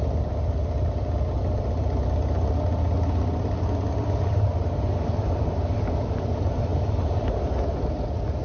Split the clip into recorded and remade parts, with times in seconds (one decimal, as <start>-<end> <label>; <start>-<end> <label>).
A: 0.0-8.4 recorded